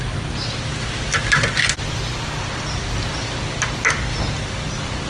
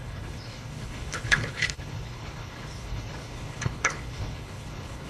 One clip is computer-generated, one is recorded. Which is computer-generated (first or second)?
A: second